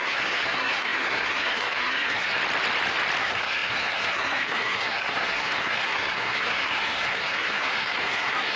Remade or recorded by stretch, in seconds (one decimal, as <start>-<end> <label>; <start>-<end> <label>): 0.0-2.4 remade; 2.4-3.2 recorded; 3.2-8.6 remade